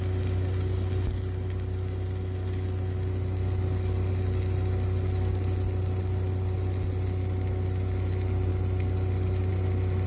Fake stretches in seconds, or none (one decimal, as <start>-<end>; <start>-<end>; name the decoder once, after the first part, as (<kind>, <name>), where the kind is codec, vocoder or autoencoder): none